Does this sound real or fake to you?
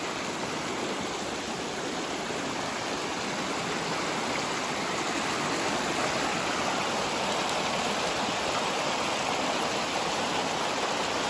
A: real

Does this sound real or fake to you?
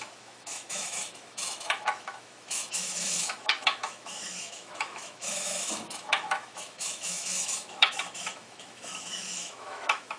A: fake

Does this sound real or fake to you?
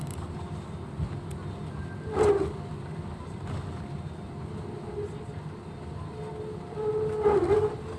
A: real